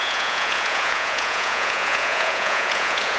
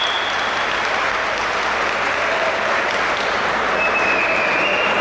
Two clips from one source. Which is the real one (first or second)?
second